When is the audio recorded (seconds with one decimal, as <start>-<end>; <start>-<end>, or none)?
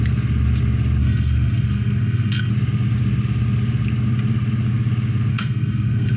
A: 0.0-1.0; 2.5-5.3